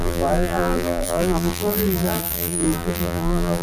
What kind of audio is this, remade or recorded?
remade